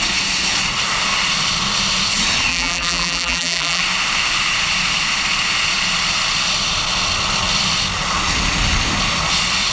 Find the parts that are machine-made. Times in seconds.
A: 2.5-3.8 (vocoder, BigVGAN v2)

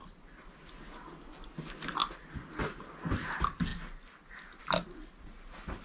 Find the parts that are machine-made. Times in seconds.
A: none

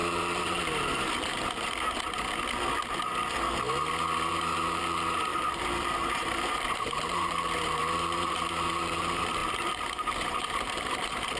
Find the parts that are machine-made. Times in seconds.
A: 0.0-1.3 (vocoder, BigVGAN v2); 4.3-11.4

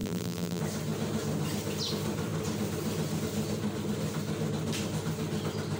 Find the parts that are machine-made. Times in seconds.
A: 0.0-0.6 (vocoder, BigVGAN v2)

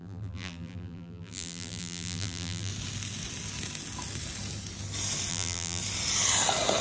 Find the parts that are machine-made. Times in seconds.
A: 0.0-2.7 (vocoder, BigVGAN v2); 5.3-5.8

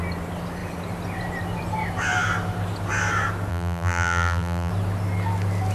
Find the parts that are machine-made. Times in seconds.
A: 3.5-4.7 (vocoder, BigVGAN v2)

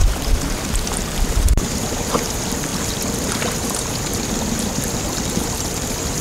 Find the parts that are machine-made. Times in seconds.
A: 0.6-2.7 (vocoder, BigVGAN v2); 4.4-6.2

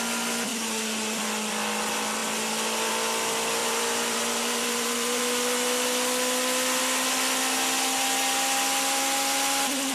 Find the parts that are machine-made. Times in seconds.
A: 0.5-1.2 (vocoder, BigVGAN v2); 3.6-5.2